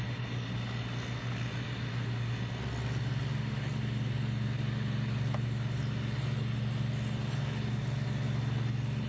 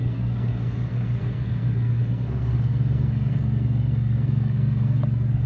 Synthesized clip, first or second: second